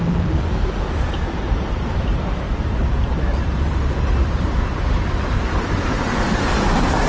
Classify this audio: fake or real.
fake